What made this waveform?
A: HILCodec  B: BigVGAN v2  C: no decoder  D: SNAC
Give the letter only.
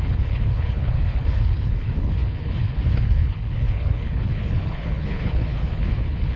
A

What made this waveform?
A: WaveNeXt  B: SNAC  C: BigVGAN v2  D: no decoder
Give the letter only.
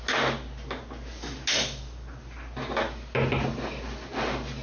D